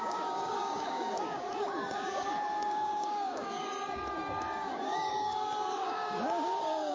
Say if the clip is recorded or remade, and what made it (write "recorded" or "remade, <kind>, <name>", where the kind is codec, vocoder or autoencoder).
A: remade, codec, DAC